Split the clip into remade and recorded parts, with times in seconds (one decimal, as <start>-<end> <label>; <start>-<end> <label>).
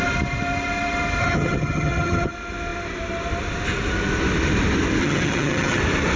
0.0-1.2 recorded; 1.2-2.3 remade; 2.3-5.0 recorded; 5.0-5.8 remade; 5.8-6.2 recorded